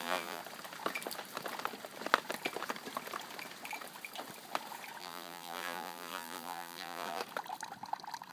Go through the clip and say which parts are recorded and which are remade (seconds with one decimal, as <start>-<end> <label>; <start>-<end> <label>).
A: 0.0-0.4 remade; 0.4-5.0 recorded; 5.0-7.2 remade; 7.2-8.3 recorded